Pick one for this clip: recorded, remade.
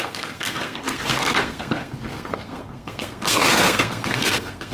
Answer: remade